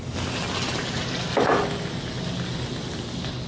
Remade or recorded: recorded